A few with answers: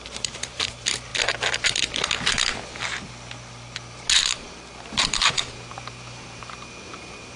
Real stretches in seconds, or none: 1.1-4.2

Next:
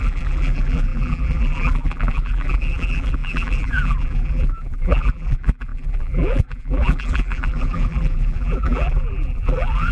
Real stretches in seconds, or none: none

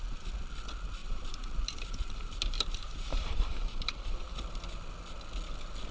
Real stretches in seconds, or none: 0.0-1.0; 4.1-5.9

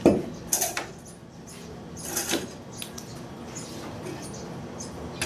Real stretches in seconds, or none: 0.0-5.3

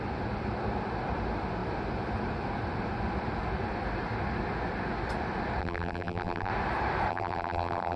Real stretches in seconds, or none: 0.0-5.6; 6.5-7.1

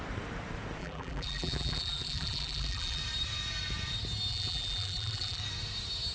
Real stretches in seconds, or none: 0.0-0.8; 3.0-4.3; 5.4-6.1

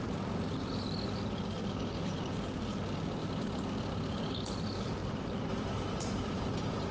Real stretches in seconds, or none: 0.0-3.2; 4.4-6.9

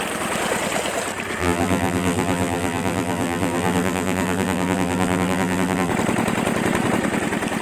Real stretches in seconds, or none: 0.0-1.4; 5.9-7.6